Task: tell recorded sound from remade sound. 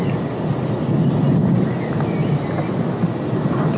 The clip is recorded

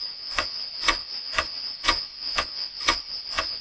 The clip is remade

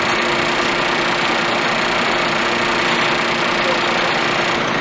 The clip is recorded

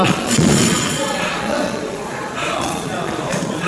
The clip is remade